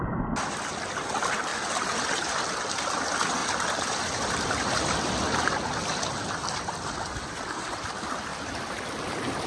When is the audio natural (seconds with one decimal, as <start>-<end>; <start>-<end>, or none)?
0.0-1.5; 2.2-3.4; 7.8-8.3; 9.0-9.5